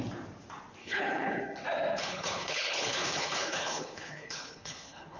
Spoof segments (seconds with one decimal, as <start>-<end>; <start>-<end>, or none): 0.8-1.4; 2.0-5.2